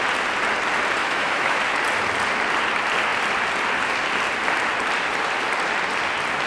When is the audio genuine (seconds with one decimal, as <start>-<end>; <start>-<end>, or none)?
0.0-1.0; 1.6-6.5